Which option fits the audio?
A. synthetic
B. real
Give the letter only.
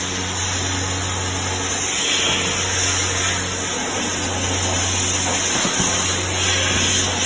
B